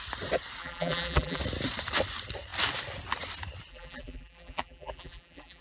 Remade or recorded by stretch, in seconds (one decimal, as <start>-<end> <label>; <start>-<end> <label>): 0.0-0.6 recorded; 0.6-1.4 remade; 1.4-3.7 recorded; 3.7-5.6 remade